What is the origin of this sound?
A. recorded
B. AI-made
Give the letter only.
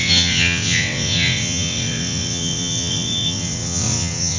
B